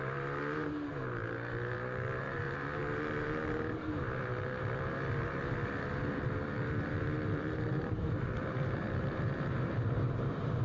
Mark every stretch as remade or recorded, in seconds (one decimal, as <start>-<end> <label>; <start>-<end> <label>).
0.0-10.6 remade